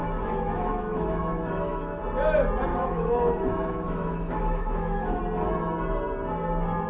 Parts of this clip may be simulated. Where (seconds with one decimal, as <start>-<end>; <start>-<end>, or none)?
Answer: 0.0-2.0; 2.7-5.2